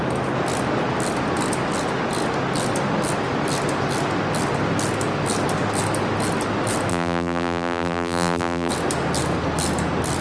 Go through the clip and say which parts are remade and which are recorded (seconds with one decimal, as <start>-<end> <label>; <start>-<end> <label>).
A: 0.0-6.9 recorded; 6.9-8.7 remade; 8.7-10.2 recorded

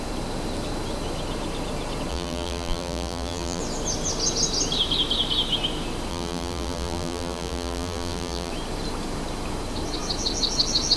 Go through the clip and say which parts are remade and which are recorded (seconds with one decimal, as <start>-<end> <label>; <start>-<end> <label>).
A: 0.0-2.1 recorded; 2.1-3.6 remade; 3.6-6.1 recorded; 6.1-8.5 remade; 8.5-11.0 recorded

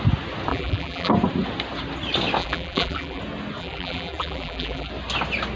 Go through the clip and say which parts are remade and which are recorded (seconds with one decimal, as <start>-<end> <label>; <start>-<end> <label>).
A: 0.0-0.5 recorded; 0.5-1.1 remade; 1.1-2.4 recorded; 2.4-3.2 remade; 3.2-3.6 recorded; 3.6-4.9 remade; 4.9-5.6 recorded

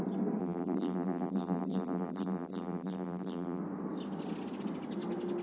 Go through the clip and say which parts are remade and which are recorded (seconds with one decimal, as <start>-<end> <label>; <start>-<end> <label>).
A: 0.0-0.4 recorded; 0.4-3.6 remade; 3.6-5.4 recorded

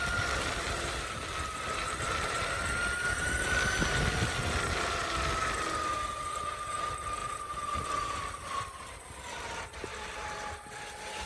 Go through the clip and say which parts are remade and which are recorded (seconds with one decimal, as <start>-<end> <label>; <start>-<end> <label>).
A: 0.0-7.2 recorded; 7.2-9.7 remade; 9.7-11.3 recorded

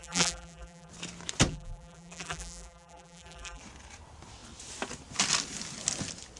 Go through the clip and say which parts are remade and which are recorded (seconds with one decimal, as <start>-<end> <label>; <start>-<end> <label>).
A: 0.0-0.9 remade; 0.9-1.5 recorded; 1.5-3.6 remade; 3.6-6.4 recorded

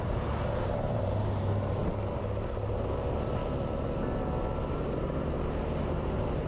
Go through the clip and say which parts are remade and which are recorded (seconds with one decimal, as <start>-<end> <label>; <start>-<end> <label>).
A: 0.0-1.8 remade; 1.8-2.7 recorded; 2.7-3.4 remade; 3.4-4.7 recorded; 4.7-6.5 remade

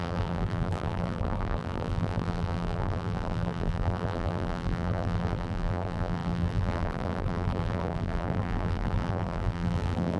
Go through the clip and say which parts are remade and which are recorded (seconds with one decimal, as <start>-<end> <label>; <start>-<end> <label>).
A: 0.0-10.2 remade